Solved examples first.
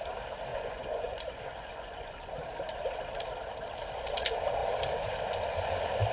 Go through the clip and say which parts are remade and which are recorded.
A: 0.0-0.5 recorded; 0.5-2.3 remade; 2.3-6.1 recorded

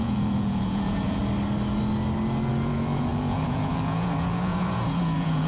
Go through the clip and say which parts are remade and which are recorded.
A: 0.0-1.2 remade; 1.2-2.5 recorded; 2.5-5.5 remade

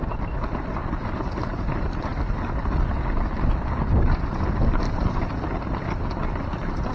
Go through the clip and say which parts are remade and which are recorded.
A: 0.0-6.9 recorded

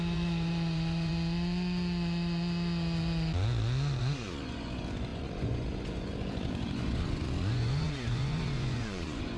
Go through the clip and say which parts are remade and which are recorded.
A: 0.0-1.1 remade; 1.1-4.0 recorded; 4.0-9.4 remade

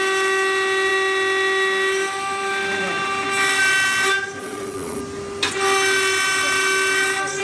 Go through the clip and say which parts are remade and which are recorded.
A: 0.0-4.4 recorded; 4.4-5.0 remade; 5.0-7.4 recorded

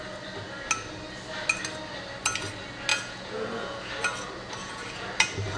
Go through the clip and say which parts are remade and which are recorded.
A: 0.0-2.9 recorded; 2.9-3.9 remade; 3.9-4.6 recorded; 4.6-5.1 remade; 5.1-5.6 recorded